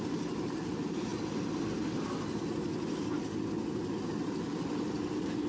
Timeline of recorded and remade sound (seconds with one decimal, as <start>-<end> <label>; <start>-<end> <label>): 0.0-1.1 remade; 1.1-4.2 recorded; 4.2-5.5 remade